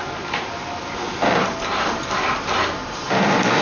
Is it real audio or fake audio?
real